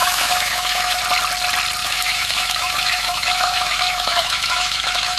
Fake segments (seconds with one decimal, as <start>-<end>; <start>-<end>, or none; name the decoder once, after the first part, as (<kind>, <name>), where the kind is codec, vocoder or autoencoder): 0.0-1.0 (autoencoder, DAC-VAE); 1.8-5.2